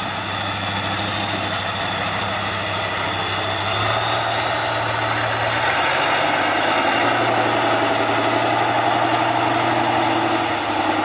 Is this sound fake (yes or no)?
no